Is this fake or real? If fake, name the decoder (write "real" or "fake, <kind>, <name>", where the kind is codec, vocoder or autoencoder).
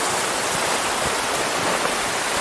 real